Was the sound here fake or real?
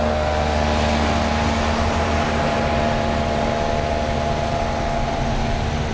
real